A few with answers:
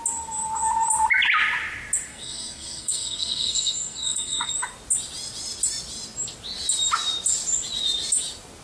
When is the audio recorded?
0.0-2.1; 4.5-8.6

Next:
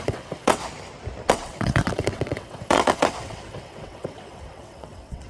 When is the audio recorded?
0.6-1.3

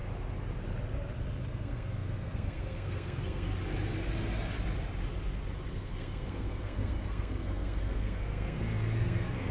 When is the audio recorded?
0.0-1.5; 3.5-5.7

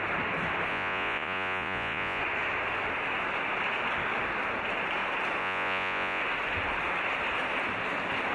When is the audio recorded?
0.0-0.7; 2.2-5.4; 6.2-8.3

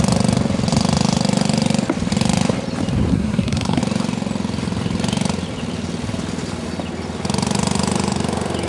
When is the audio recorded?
0.0-3.1; 3.8-8.7

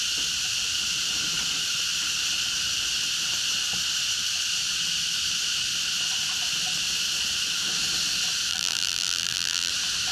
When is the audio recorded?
0.0-8.5; 9.7-10.1

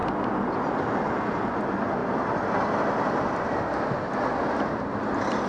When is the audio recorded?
0.0-5.5

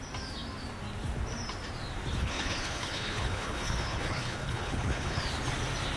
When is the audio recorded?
0.0-2.2; 5.2-6.0